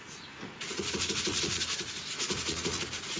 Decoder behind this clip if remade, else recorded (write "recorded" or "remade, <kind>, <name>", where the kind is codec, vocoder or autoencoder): remade, vocoder, Vocos